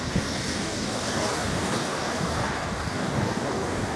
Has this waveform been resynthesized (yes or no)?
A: yes